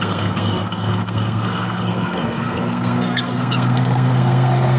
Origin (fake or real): fake